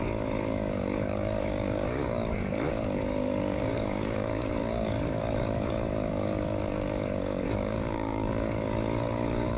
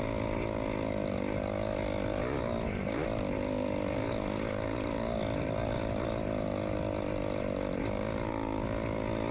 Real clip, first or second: second